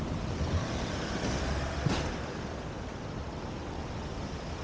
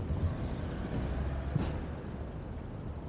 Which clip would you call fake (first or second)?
first